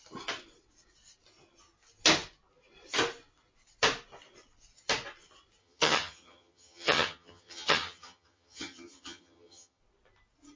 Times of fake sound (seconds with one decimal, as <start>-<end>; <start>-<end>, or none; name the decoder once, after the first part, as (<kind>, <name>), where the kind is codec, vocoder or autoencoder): 5.6-9.8 (vocoder, HiFi-GAN)